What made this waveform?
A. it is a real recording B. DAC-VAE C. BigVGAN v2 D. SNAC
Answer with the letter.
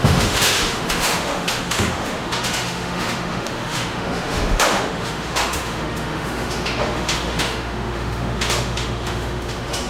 B